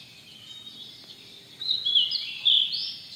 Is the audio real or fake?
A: real